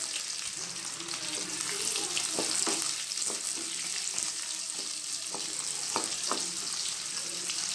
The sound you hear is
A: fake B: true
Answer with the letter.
B